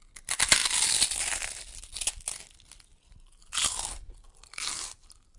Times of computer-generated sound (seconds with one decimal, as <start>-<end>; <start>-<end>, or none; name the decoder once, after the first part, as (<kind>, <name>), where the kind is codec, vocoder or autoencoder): none